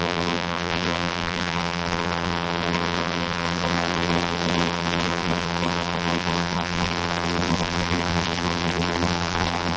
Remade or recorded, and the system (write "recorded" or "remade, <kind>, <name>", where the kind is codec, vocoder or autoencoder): remade, vocoder, BigVGAN v2